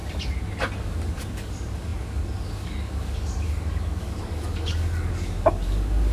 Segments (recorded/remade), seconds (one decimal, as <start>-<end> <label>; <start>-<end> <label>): 0.0-0.8 recorded; 0.8-6.1 remade